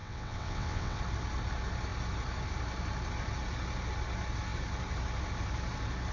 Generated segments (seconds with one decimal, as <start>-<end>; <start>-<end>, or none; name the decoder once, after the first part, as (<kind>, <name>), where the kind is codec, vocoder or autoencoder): 0.0-1.0 (vocoder, WaveNeXt)